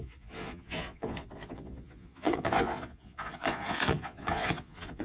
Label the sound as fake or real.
fake